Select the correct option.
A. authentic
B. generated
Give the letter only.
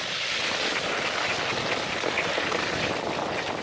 A